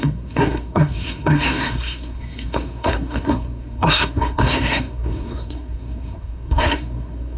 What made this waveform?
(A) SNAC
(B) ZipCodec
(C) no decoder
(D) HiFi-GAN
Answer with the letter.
A